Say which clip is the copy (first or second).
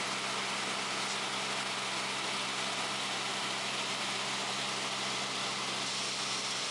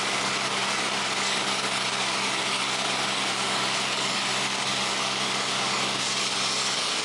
second